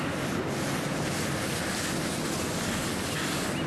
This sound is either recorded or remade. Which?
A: recorded